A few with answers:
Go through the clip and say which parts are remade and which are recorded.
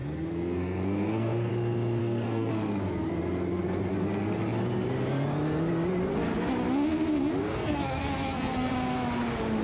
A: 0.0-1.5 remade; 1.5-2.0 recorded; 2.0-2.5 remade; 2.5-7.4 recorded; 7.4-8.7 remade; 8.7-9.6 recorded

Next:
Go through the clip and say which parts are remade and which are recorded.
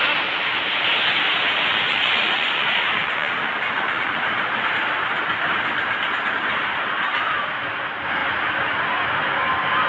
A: 0.0-1.7 recorded; 1.7-4.2 remade; 4.2-9.9 recorded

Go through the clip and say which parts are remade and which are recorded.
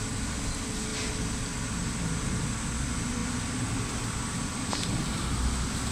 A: 0.0-5.9 recorded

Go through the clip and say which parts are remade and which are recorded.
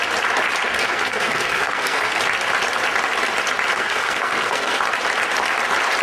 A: 0.0-0.7 recorded; 0.7-2.2 remade; 2.2-3.7 recorded; 3.7-4.8 remade; 4.8-6.0 recorded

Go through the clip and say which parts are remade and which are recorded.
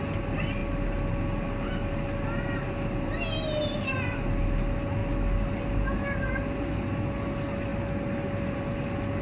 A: 0.0-9.2 recorded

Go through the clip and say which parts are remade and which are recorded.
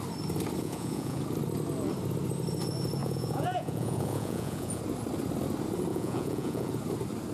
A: 0.0-0.6 recorded; 0.6-1.2 remade; 1.2-3.0 recorded; 3.0-4.8 remade; 4.8-5.9 recorded; 5.9-6.7 remade; 6.7-7.3 recorded